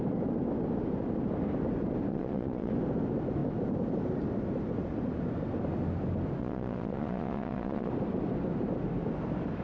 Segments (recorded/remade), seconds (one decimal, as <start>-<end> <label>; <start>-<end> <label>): 0.0-2.1 recorded; 2.1-2.7 remade; 2.7-6.4 recorded; 6.4-7.9 remade; 7.9-9.6 recorded